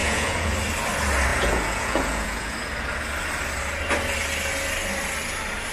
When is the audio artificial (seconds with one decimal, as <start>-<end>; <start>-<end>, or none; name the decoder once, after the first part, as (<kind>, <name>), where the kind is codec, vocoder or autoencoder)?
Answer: 0.0-0.6 (vocoder, Vocos); 1.3-2.7